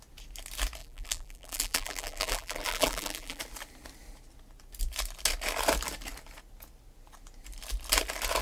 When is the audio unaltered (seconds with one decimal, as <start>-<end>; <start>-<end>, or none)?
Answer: 0.0-0.8; 3.4-8.4